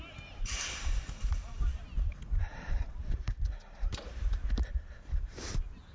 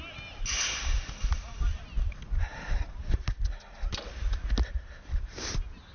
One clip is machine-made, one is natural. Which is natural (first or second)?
second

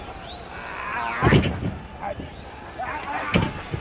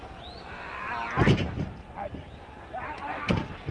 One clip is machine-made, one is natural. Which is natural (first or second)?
first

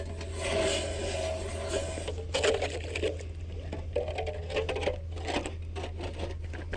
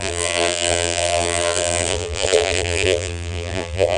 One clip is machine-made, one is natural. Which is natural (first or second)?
first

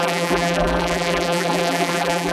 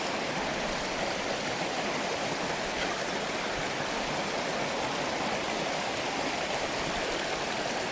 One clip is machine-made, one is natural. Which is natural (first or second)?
second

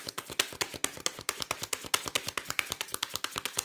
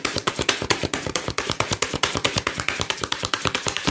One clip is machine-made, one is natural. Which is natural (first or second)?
first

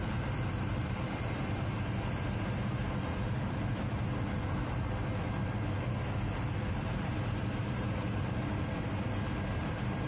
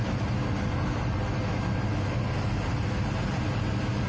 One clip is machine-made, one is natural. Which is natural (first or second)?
second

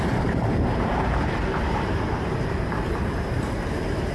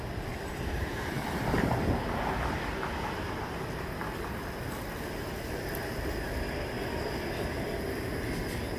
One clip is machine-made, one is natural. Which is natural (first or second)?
second